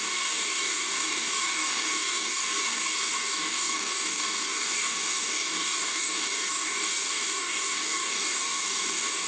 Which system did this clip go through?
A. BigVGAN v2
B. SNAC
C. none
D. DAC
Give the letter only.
D